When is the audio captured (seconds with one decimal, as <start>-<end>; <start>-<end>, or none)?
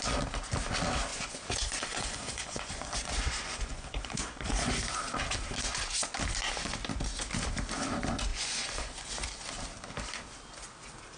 0.0-1.1; 4.7-8.3; 9.1-11.2